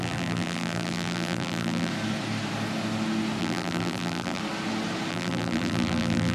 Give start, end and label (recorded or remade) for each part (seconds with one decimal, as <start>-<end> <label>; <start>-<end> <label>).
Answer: 0.0-1.9 remade; 1.9-3.4 recorded; 3.4-4.4 remade; 4.4-5.1 recorded; 5.1-6.3 remade